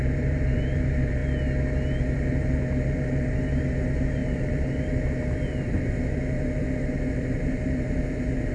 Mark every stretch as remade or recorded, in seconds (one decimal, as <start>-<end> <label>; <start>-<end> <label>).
0.0-1.2 remade; 1.2-2.0 recorded; 2.0-8.5 remade